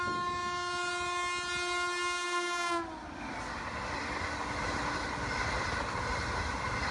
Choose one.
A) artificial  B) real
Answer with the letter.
B